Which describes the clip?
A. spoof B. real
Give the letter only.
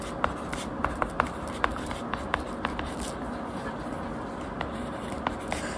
B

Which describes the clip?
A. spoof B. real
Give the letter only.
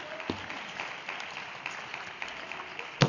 B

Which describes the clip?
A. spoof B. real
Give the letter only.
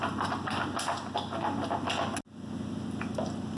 B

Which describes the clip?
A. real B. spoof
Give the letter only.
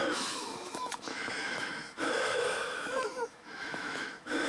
B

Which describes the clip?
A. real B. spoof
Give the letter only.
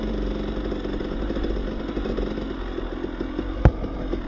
A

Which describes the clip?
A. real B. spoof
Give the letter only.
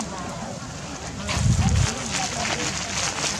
A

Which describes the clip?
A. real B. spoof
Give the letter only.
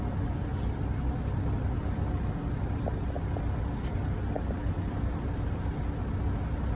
A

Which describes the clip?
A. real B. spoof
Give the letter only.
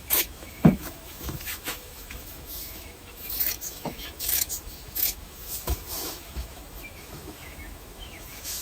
B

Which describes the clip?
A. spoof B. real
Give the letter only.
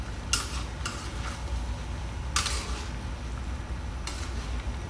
B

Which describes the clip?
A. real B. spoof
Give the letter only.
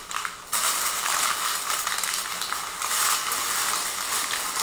A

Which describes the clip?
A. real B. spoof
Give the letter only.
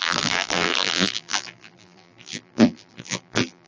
B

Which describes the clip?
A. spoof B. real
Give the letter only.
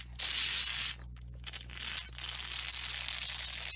B